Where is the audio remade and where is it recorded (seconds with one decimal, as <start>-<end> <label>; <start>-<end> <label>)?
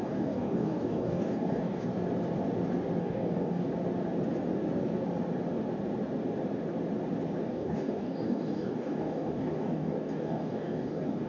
0.0-1.9 remade; 1.9-3.0 recorded; 3.0-3.7 remade; 3.7-7.5 recorded; 7.5-11.3 remade